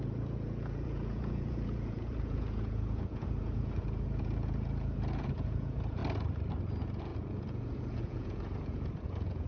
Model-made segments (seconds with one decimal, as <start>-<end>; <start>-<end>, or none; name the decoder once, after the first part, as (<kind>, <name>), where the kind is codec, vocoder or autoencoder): 0.0-6.0 (vocoder, Vocos); 6.6-9.5